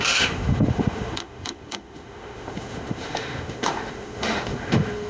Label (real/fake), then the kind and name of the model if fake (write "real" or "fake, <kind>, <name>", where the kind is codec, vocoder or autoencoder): fake, autoencoder, DAC-VAE